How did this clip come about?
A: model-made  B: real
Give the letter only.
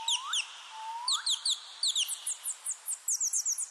B